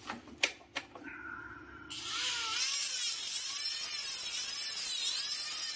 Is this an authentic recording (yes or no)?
yes